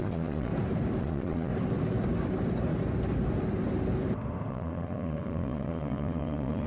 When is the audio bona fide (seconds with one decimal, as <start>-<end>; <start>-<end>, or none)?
0.5-1.0; 1.5-4.5